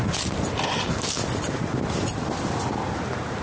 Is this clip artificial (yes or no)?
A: no